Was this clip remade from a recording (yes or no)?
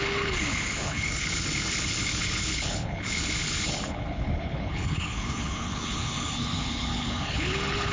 yes